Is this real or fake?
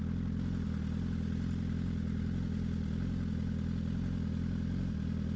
real